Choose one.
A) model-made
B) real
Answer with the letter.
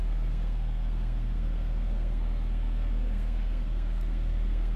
A